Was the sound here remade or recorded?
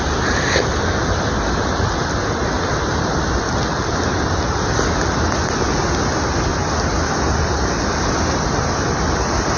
recorded